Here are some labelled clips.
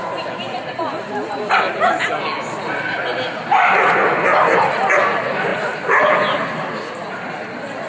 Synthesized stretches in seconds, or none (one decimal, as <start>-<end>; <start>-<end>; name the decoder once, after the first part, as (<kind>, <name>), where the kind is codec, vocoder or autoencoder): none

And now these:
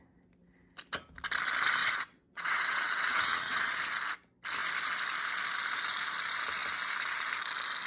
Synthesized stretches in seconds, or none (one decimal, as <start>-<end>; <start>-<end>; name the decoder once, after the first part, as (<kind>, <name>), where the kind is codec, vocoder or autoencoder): 1.8-3.7 (vocoder, WaveNeXt)

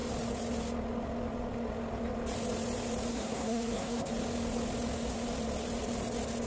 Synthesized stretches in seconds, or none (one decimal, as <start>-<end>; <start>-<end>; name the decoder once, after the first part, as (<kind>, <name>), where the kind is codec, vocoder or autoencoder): 3.1-4.1 (codec, SNAC)

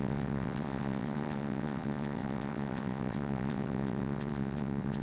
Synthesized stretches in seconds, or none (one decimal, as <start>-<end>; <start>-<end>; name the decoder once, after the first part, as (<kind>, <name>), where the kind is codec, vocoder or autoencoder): 0.0-5.0 (vocoder, WaveNeXt)

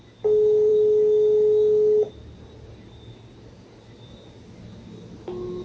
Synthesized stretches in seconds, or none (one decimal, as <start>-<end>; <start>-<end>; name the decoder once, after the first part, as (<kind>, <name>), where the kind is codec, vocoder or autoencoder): none

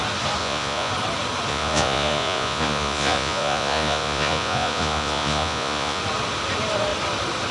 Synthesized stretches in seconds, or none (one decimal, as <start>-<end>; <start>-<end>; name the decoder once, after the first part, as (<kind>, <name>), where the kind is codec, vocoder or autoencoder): 0.4-0.9 (vocoder, Vocos); 1.5-6.0

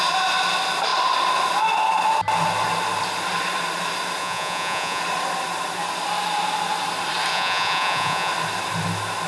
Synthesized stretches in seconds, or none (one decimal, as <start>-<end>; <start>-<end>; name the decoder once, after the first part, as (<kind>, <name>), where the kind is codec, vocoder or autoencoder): 4.2-5.0 (vocoder, Vocos); 7.3-8.3